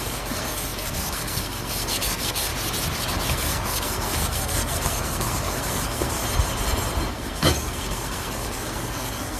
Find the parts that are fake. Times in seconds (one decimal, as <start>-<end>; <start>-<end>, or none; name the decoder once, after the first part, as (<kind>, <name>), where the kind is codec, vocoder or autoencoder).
0.0-2.5 (codec, SNAC); 3.3-6.2; 7.1-9.4

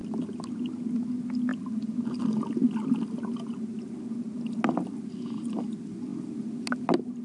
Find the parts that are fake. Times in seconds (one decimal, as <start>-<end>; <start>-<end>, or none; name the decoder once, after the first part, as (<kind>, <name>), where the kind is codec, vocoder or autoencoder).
none

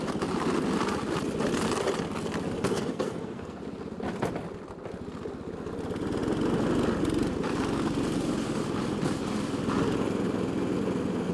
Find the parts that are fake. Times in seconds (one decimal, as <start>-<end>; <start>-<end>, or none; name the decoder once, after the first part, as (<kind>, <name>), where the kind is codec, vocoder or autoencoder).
2.7-3.6 (codec, SNAC)

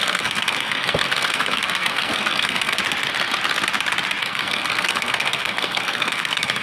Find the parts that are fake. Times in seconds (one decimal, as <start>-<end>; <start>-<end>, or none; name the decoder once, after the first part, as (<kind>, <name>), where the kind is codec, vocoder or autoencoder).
0.0-2.8 (codec, SNAC); 4.2-6.6

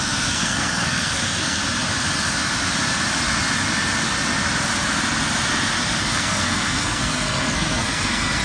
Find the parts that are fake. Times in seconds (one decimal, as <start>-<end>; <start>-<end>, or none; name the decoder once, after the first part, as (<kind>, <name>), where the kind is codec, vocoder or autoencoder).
0.0-1.6 (codec, SNAC); 6.0-8.4

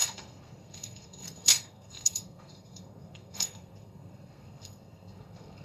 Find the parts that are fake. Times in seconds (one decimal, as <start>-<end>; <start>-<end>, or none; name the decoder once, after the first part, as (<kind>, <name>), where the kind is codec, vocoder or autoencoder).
0.0-5.6 (codec, SNAC)

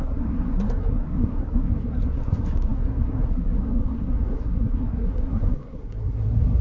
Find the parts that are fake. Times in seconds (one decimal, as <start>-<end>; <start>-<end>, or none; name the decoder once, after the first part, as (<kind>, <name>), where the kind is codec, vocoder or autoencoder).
0.0-6.6 (codec, SNAC)

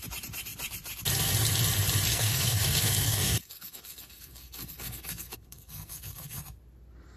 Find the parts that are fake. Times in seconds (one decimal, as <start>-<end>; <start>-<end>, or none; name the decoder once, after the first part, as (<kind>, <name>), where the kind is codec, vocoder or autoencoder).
2.1-6.4 (codec, SNAC)